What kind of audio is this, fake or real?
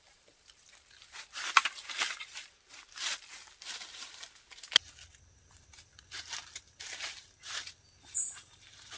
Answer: real